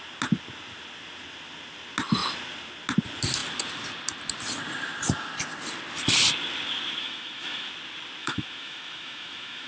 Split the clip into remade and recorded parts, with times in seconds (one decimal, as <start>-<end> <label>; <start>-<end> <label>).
0.0-7.0 recorded; 7.0-7.7 remade; 7.7-8.2 recorded; 8.2-9.7 remade